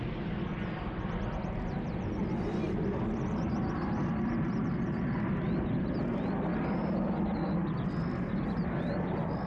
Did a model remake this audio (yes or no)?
no